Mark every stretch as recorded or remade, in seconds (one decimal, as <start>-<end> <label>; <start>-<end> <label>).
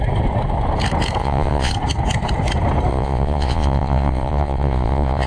0.0-1.2 recorded; 1.2-1.7 remade; 1.7-2.9 recorded; 2.9-5.3 remade